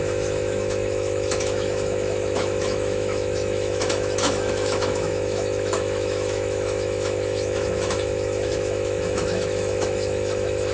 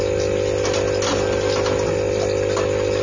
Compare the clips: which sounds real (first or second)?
second